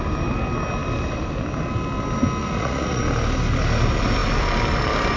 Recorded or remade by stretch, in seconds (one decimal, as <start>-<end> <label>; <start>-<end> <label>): 0.0-2.4 recorded; 2.4-3.0 remade; 3.0-5.2 recorded